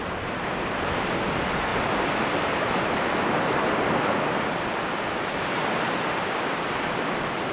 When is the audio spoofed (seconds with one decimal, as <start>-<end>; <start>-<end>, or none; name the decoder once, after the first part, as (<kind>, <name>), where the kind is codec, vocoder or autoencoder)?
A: none